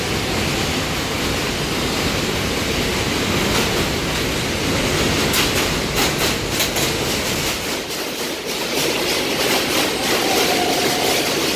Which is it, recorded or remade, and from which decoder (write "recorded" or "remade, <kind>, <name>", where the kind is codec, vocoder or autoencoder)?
recorded